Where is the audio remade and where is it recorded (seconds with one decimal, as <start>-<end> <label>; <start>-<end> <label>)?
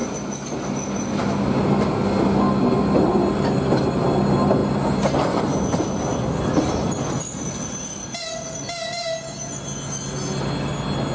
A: 0.0-11.1 recorded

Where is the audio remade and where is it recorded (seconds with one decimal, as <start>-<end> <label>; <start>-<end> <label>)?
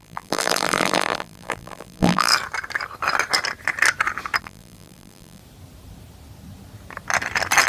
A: 0.0-2.3 remade; 2.3-4.4 recorded; 4.4-5.4 remade; 5.4-7.7 recorded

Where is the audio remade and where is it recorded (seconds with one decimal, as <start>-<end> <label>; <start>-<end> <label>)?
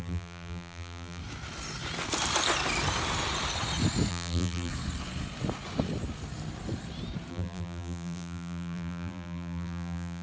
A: 0.0-1.2 remade; 1.2-4.1 recorded; 4.1-4.7 remade; 4.7-7.3 recorded; 7.3-10.2 remade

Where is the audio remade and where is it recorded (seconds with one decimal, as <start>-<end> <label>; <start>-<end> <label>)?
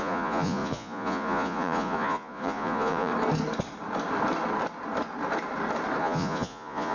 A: 0.0-3.1 remade; 3.1-6.0 recorded; 6.0-6.9 remade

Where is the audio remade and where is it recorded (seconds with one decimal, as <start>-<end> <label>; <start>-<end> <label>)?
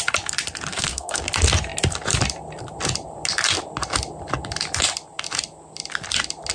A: 0.0-0.7 recorded; 0.7-1.2 remade; 1.2-6.5 recorded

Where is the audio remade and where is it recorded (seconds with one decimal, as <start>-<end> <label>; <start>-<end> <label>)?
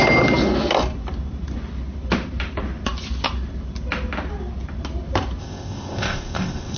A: 0.0-5.4 recorded; 5.4-6.8 remade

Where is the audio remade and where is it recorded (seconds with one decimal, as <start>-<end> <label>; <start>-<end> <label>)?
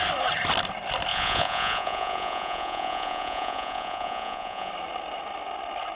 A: 0.0-1.1 recorded; 1.1-4.7 remade; 4.7-6.0 recorded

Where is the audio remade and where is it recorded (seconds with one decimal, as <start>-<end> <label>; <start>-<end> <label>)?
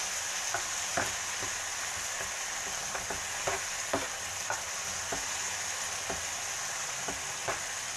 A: 0.0-8.0 recorded